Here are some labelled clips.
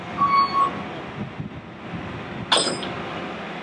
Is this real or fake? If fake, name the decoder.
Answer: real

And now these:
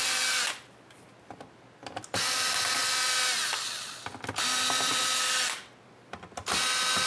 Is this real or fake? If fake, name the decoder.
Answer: real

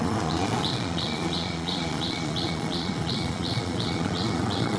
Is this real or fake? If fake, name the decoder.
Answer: fake, vocoder, Vocos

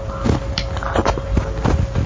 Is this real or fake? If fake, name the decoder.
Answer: real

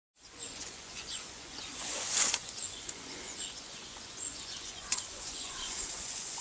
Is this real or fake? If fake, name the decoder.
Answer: fake, vocoder, Vocos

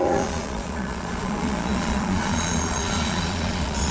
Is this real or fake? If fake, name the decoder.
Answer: fake, vocoder, Vocos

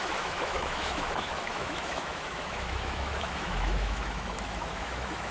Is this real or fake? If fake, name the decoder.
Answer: fake, autoencoder, DAC-VAE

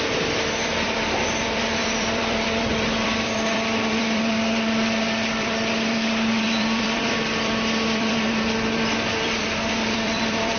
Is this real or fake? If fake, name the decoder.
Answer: fake, vocoder, BigVGAN v2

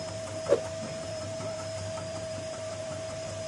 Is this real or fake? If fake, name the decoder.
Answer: fake, vocoder, BigVGAN v2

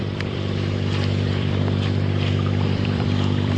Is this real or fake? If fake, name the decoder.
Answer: fake, vocoder, BigVGAN v2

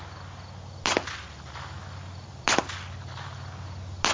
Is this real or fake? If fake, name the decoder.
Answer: real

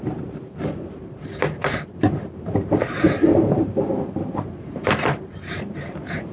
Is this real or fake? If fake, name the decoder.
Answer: fake, vocoder, BigVGAN v2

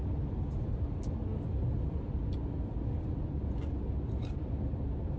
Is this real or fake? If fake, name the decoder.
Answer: real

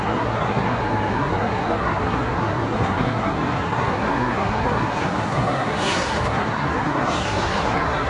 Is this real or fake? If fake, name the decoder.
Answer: fake, codec, SNAC